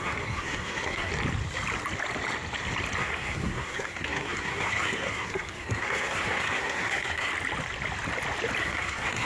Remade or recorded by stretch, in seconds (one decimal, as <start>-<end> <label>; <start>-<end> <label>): 0.0-1.1 remade; 1.1-3.0 recorded; 3.0-7.3 remade; 7.3-8.6 recorded; 8.6-9.3 remade